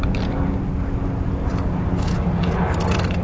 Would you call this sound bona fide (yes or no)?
yes